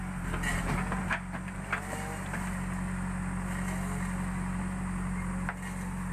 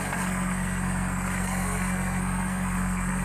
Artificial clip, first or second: second